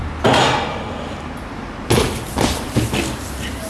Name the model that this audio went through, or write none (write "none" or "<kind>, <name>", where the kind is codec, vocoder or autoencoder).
none